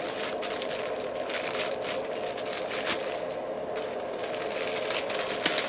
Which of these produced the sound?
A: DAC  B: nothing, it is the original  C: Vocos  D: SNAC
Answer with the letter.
B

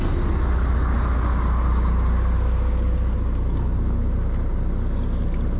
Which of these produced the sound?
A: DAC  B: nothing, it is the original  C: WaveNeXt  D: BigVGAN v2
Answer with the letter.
B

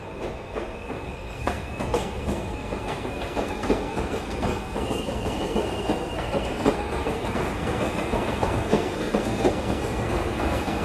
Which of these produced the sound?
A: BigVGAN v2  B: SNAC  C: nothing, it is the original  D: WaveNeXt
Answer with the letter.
B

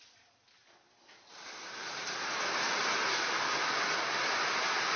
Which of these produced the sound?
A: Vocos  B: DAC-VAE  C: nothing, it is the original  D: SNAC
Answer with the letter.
C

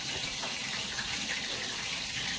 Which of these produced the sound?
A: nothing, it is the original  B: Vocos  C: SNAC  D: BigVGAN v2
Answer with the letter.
A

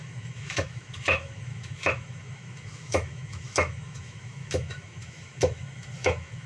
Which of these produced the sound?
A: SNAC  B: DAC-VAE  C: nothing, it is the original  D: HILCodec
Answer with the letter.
B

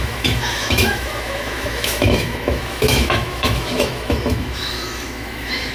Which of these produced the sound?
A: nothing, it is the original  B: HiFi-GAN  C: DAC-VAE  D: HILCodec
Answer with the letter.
C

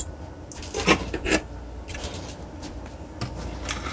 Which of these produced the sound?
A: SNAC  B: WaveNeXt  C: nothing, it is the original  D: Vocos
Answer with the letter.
C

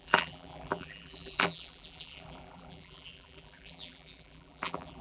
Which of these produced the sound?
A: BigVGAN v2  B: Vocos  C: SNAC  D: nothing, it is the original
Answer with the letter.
A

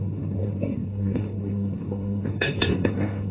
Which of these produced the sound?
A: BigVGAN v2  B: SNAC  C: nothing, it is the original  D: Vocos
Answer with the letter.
B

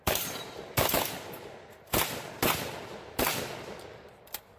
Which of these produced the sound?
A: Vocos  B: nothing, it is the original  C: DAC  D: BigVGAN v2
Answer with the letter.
D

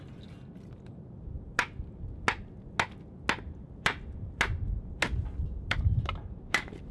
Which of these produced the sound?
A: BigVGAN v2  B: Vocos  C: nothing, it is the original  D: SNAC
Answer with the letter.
C